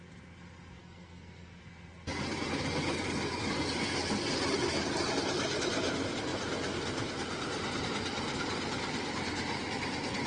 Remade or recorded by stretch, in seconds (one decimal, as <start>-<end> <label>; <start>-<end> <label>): 0.0-0.8 recorded; 0.8-1.6 remade; 1.6-10.3 recorded